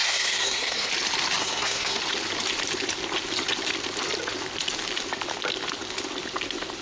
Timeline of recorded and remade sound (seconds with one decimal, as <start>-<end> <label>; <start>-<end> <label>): 0.0-0.9 remade; 0.9-1.4 recorded; 1.4-2.0 remade; 2.0-6.8 recorded

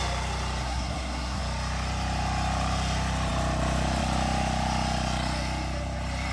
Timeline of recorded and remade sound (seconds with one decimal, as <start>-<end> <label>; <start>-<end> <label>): 0.0-0.6 recorded; 0.6-1.4 remade; 1.4-6.3 recorded

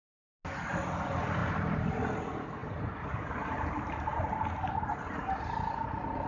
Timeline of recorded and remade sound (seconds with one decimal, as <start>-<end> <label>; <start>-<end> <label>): 0.0-1.4 recorded; 1.4-1.9 remade; 1.9-2.6 recorded; 2.6-6.3 remade